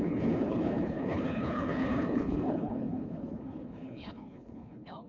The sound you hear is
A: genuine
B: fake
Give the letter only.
B